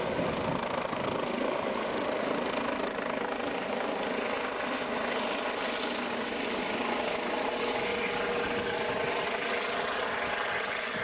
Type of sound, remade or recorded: recorded